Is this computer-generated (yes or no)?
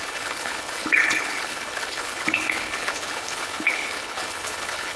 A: yes